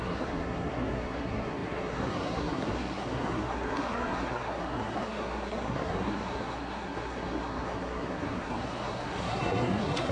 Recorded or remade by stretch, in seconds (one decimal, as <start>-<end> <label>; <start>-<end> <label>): 0.0-10.1 remade